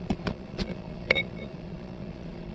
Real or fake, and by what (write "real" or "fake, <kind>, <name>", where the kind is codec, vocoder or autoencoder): fake, vocoder, Vocos